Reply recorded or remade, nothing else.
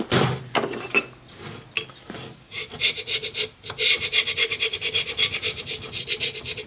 recorded